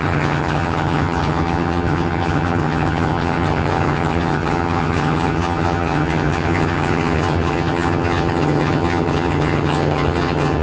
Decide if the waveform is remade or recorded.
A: remade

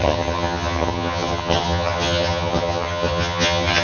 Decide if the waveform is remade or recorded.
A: remade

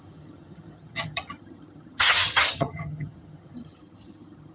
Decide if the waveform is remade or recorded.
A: remade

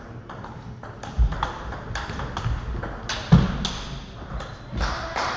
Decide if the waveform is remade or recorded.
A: recorded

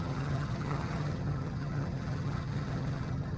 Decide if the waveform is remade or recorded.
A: remade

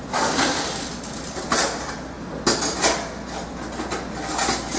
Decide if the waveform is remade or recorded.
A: recorded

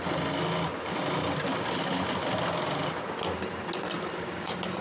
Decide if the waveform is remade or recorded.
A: recorded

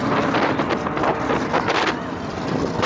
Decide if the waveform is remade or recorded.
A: recorded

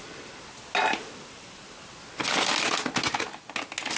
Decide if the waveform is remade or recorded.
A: recorded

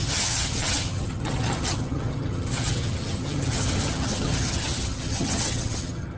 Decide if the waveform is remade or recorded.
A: remade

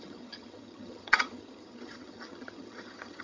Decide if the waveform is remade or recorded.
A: remade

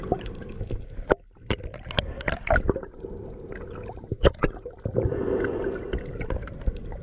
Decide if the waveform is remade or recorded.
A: recorded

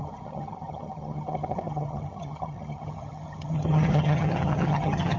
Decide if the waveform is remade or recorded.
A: remade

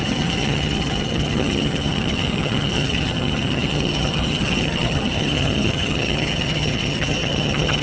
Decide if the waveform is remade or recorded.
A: remade